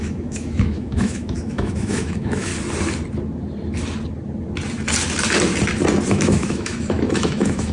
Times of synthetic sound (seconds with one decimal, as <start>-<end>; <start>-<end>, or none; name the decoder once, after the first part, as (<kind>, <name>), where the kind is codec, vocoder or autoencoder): 0.0-2.5 (autoencoder, DAC-VAE); 6.1-7.7